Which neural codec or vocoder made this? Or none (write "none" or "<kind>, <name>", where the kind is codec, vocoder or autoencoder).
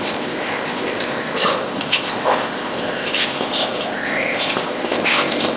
codec, ZipCodec